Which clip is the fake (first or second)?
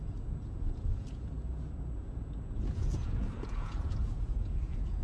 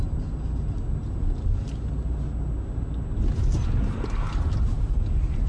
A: first